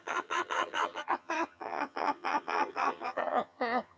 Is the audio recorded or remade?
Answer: remade